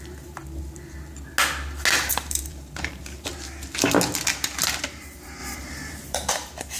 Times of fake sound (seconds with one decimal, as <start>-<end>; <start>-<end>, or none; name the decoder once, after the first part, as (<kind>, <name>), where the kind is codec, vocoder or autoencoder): 0.0-0.4 (vocoder, BigVGAN v2); 2.0-3.3; 4.8-6.8